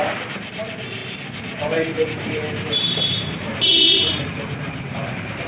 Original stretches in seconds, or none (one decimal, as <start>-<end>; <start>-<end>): none